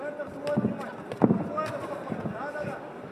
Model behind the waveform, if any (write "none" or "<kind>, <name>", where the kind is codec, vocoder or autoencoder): none